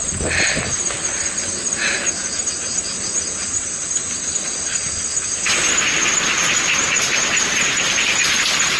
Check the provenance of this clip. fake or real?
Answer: real